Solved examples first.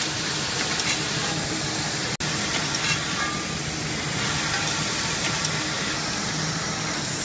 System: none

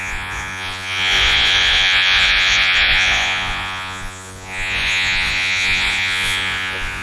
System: vocoder, Vocos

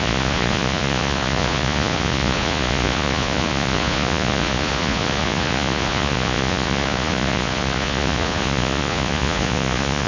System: vocoder, Vocos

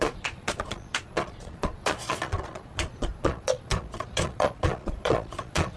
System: vocoder, Vocos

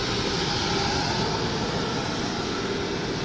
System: none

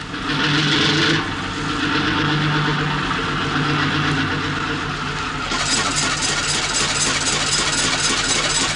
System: none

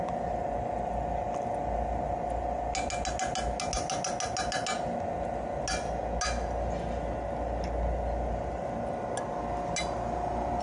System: none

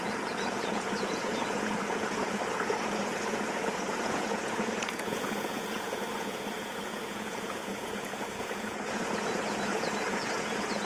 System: vocoder, Vocos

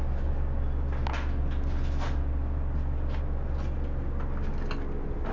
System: none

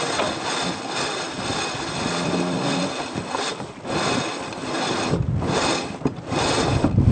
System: none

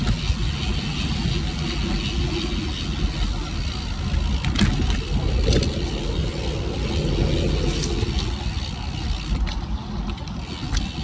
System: none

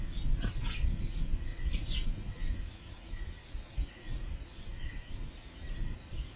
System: vocoder, Vocos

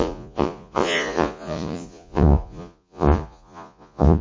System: vocoder, Vocos